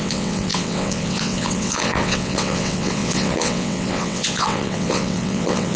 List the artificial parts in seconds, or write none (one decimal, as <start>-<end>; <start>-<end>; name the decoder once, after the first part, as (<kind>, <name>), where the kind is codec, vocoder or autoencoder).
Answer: 0.0-5.8 (vocoder, WaveNeXt)